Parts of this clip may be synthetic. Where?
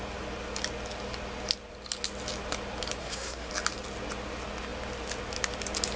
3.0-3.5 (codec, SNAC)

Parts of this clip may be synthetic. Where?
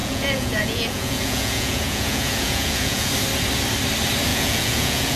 0.0-3.1 (vocoder, Vocos); 4.3-5.2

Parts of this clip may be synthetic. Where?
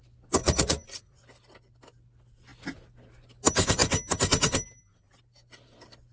0.4-1.2 (vocoder, Vocos)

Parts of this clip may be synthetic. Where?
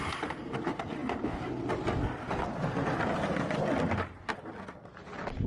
none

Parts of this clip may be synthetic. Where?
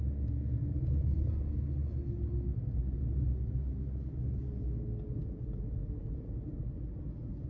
0.6-1.3 (vocoder, BigVGAN v2); 5.2-6.6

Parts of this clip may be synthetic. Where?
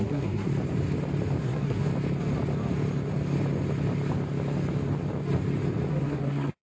0.0-0.5 (codec, SNAC); 1.4-1.9; 5.9-6.6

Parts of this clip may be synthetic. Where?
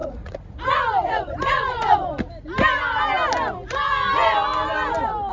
0.0-2.1 (vocoder, Vocos)